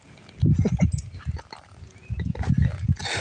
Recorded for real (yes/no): yes